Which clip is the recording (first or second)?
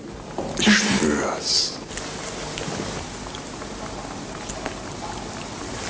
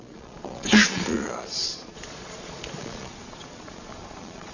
first